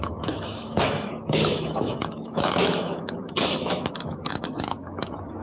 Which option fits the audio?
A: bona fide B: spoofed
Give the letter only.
B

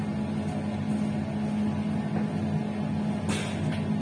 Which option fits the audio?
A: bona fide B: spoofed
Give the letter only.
A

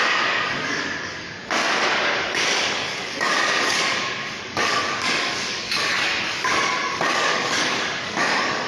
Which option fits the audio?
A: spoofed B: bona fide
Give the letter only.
A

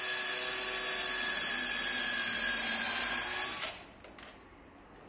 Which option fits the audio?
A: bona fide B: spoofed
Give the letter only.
A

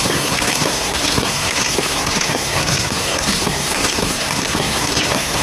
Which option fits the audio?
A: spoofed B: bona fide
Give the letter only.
A